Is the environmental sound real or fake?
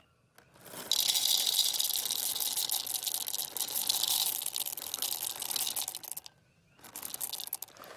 real